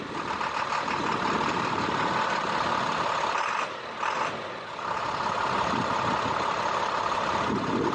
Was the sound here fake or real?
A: real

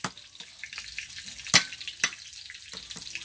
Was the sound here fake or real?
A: real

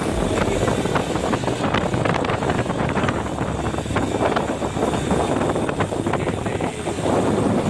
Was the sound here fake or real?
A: real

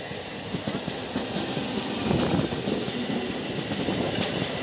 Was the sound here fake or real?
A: real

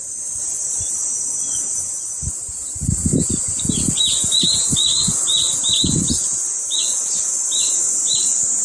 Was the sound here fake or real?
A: real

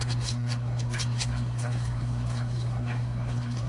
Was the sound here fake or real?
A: fake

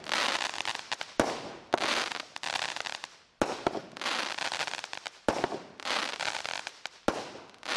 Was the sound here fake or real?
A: real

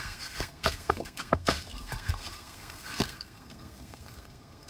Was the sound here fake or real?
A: fake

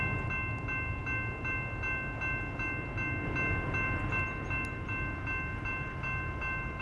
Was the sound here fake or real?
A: real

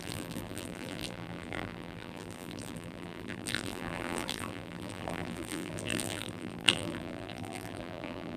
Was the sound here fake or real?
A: fake